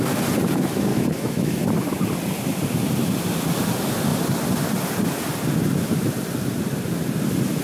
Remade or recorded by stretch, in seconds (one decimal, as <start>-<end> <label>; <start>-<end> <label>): 0.0-0.9 recorded; 0.9-1.6 remade; 1.6-7.6 recorded